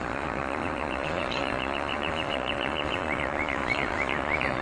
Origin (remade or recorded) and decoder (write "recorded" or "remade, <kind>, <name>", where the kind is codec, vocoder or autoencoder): remade, vocoder, Vocos